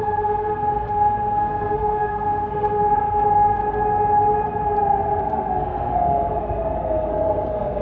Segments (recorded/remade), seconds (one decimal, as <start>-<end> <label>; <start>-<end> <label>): 0.0-3.6 remade; 3.6-5.2 recorded; 5.2-7.8 remade